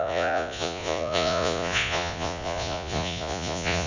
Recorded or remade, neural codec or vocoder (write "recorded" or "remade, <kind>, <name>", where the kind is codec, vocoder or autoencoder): remade, vocoder, Vocos